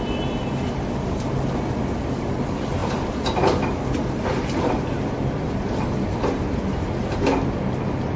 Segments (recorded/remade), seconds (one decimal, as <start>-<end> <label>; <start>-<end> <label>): 0.0-8.2 remade